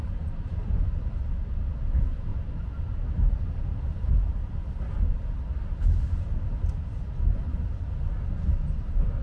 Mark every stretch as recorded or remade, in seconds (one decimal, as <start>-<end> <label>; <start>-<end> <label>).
0.0-1.2 remade; 1.2-2.3 recorded; 2.3-4.1 remade; 4.1-9.2 recorded